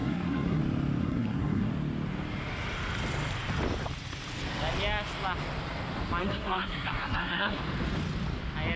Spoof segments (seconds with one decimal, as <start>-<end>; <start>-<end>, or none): 0.0-0.6; 1.0-1.7; 6.2-7.6